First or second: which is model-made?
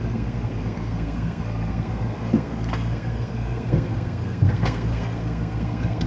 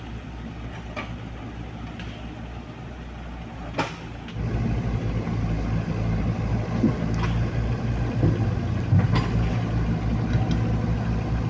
first